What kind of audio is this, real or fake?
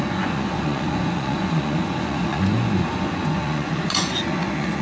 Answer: fake